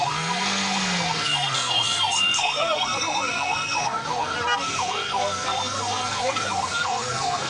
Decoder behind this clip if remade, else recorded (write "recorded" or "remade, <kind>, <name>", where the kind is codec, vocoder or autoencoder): remade, codec, SNAC